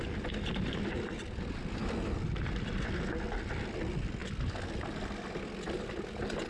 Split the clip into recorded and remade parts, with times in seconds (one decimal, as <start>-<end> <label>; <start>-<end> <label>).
0.0-6.5 recorded